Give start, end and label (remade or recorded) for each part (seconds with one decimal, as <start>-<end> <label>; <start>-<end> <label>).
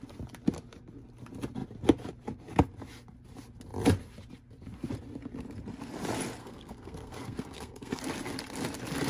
0.0-6.4 recorded; 6.4-8.0 remade; 8.0-9.1 recorded